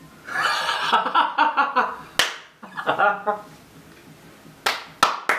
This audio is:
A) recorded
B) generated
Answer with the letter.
A